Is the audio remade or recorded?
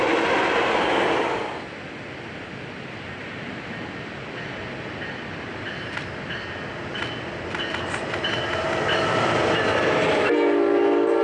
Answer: recorded